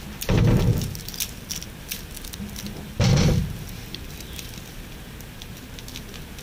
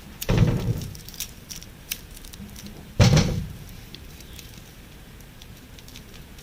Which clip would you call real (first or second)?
first